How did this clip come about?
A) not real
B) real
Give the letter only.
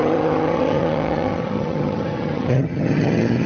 A